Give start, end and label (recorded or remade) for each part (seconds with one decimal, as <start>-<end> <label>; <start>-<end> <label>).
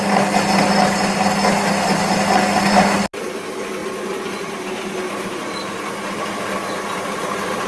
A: 0.0-7.7 recorded